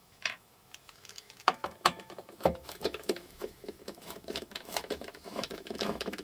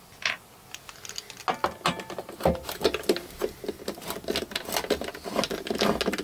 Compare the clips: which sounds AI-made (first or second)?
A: first